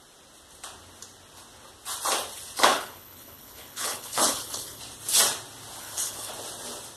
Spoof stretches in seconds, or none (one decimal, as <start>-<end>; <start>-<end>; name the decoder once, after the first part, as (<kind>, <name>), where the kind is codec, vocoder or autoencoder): 2.7-4.8 (codec, HILCodec); 5.8-6.3